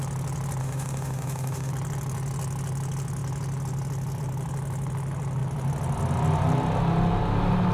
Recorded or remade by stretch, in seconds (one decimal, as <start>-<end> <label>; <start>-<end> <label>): 0.0-0.6 recorded; 0.6-1.7 remade; 1.7-7.7 recorded